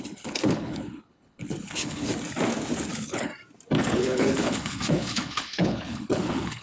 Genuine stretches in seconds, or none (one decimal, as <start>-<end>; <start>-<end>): 2.1-2.9; 3.3-3.9